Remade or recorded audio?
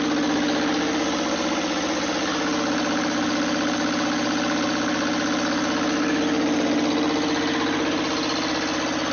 recorded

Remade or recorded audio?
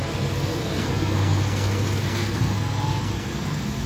remade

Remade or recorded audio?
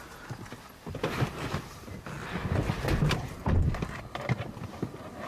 recorded